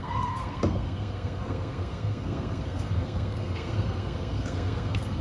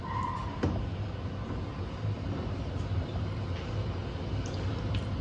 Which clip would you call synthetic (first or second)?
first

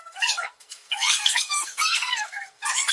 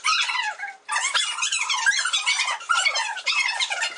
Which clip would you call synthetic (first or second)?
first